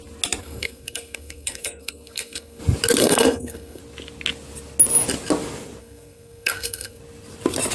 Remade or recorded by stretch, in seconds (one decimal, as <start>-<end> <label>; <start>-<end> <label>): 0.0-0.4 recorded; 0.4-2.6 remade; 2.6-3.0 recorded; 3.0-3.8 remade; 3.8-5.8 recorded; 5.8-7.0 remade; 7.0-7.7 recorded